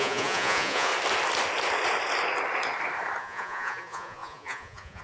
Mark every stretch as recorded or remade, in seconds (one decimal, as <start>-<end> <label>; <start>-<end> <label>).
0.0-0.9 remade; 0.9-3.2 recorded; 3.2-5.0 remade